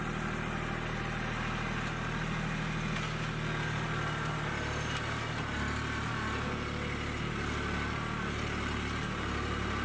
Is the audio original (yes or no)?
yes